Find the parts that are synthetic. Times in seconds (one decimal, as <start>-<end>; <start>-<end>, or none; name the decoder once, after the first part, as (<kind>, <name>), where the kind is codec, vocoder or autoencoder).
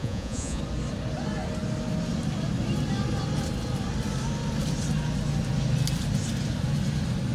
0.0-0.6 (vocoder, Vocos)